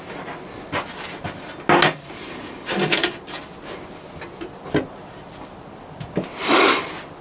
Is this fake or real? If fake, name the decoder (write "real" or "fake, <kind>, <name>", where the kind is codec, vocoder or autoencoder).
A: real